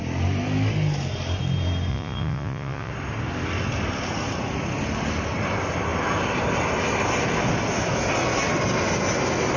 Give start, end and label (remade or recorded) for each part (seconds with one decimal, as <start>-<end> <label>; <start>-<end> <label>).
0.0-1.9 recorded; 1.9-2.9 remade; 2.9-9.6 recorded